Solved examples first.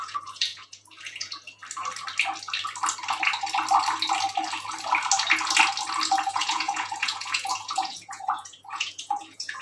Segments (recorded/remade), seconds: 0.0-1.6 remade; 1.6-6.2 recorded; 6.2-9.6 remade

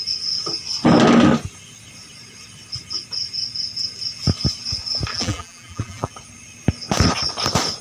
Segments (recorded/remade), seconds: 0.0-5.1 recorded; 5.1-6.1 remade; 6.1-7.8 recorded